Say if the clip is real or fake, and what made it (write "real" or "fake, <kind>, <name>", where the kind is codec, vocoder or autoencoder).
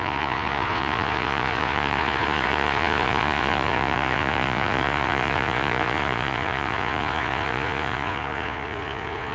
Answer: fake, vocoder, Vocos